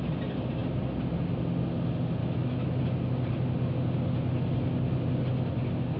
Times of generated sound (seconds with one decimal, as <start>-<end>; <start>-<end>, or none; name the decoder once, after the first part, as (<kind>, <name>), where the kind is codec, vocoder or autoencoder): 2.2-2.8 (autoencoder, DAC-VAE)